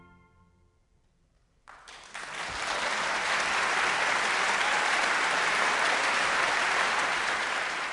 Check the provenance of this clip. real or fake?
real